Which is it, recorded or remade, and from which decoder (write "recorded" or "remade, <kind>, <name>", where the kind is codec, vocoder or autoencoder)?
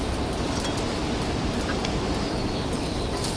recorded